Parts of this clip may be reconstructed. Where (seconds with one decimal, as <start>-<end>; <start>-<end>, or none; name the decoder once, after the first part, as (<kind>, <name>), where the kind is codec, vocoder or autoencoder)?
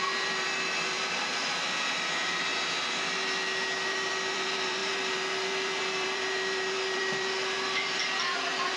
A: 0.0-2.5 (vocoder, BigVGAN v2); 3.9-8.8